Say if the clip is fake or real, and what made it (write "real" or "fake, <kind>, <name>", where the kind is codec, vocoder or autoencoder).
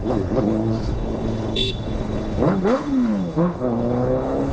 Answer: fake, codec, HILCodec